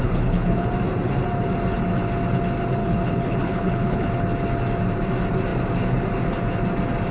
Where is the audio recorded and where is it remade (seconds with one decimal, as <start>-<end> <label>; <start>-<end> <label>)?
0.0-0.7 remade; 0.7-2.8 recorded; 2.8-4.2 remade; 4.2-7.1 recorded